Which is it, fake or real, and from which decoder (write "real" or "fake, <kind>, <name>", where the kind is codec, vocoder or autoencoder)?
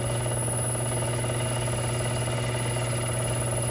real